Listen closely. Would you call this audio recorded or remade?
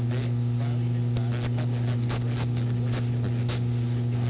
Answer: recorded